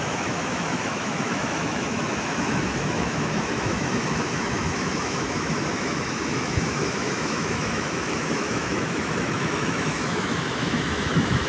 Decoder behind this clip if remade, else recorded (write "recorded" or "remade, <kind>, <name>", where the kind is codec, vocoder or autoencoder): remade, autoencoder, DAC-VAE